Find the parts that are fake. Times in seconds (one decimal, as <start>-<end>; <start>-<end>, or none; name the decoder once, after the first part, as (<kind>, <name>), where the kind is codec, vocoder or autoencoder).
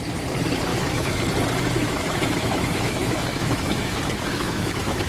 0.7-1.2 (autoencoder, DAC-VAE); 1.8-5.1